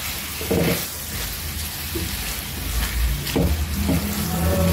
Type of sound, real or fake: real